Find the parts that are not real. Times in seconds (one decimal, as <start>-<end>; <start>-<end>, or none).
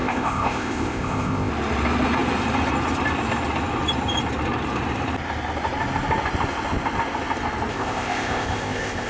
0.0-1.5; 7.7-9.1